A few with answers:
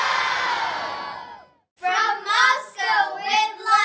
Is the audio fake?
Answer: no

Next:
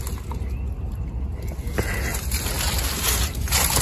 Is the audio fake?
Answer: no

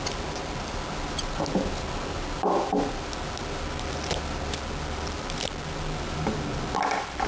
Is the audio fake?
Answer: no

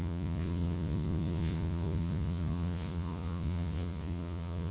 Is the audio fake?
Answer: yes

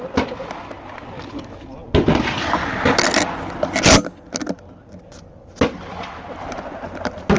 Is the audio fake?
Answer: no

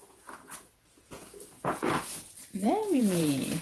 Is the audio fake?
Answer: yes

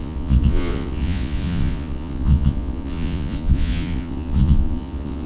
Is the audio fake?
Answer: yes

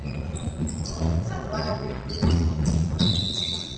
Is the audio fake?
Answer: yes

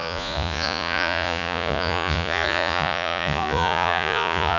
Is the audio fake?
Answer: yes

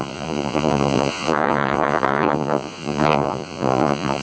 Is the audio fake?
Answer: yes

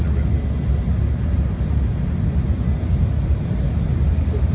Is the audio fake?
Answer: no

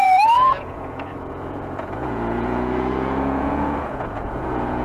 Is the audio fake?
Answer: yes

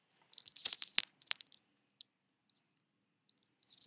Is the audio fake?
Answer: no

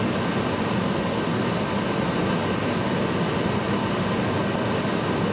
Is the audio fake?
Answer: no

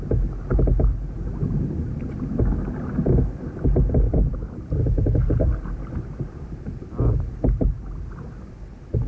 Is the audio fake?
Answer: no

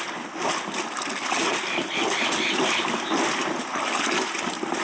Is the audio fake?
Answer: no